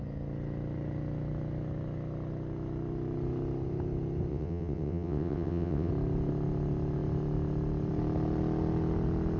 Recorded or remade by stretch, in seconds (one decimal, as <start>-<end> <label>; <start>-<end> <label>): 0.0-4.3 recorded; 4.3-5.9 remade; 5.9-9.4 recorded